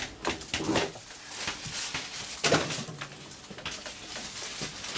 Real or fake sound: real